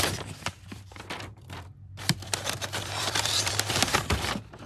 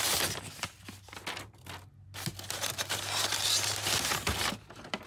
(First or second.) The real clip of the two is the second